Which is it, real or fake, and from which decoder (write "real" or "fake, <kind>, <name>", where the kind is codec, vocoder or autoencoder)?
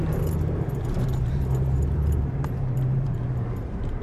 fake, vocoder, BigVGAN v2